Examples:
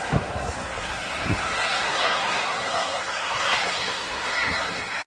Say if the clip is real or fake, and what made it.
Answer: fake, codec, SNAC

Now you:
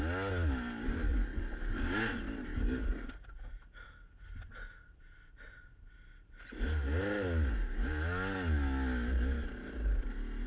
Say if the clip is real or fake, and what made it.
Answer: real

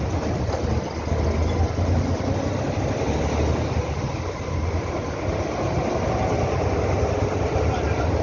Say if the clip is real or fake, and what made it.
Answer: real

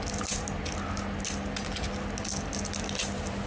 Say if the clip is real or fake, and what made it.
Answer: real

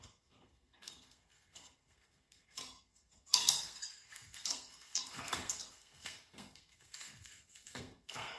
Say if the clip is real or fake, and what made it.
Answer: fake, codec, SNAC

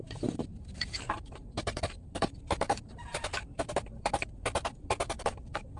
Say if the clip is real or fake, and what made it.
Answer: fake, vocoder, BigVGAN v2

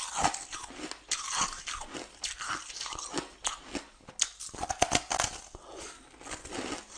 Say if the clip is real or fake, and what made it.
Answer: real